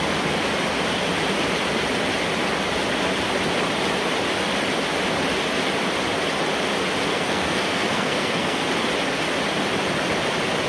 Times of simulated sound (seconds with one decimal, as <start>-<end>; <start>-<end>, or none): 7.1-8.6